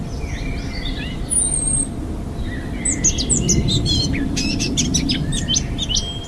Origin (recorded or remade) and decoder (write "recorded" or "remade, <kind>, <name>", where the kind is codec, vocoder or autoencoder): recorded